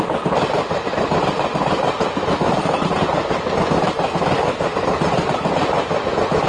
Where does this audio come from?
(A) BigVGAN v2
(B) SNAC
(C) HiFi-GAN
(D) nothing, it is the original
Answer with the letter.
D